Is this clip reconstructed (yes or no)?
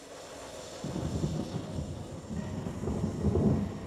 no